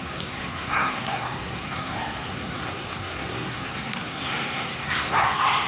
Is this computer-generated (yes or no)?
yes